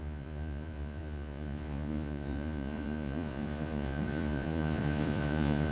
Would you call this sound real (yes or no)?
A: no